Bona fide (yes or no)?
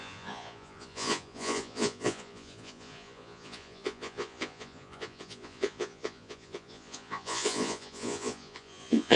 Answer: no